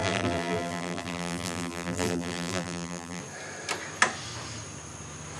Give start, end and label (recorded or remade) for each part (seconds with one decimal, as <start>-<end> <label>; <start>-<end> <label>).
0.0-3.2 remade; 3.2-5.4 recorded